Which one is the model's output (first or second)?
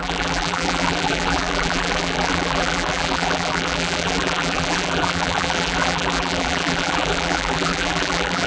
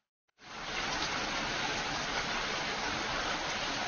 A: first